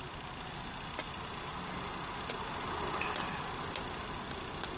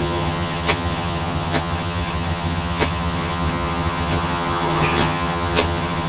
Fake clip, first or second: second